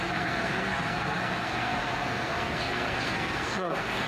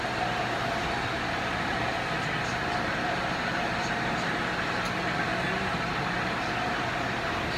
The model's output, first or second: first